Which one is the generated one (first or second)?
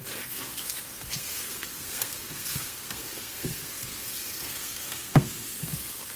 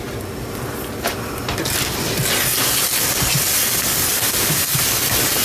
first